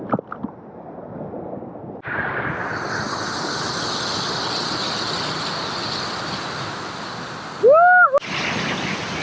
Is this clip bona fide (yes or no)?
yes